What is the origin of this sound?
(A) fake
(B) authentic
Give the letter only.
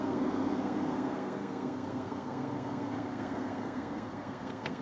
A